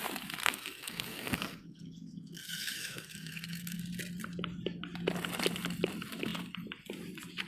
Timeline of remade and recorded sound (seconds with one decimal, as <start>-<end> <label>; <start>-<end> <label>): 0.0-0.4 recorded; 0.4-3.8 remade; 3.8-7.5 recorded